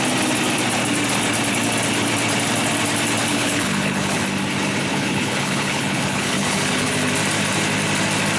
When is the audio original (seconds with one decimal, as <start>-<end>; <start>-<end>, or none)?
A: 0.0-3.3; 4.2-4.9; 6.9-8.4